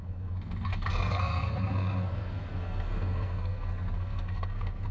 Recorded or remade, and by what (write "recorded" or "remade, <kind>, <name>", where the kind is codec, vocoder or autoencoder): remade, codec, SNAC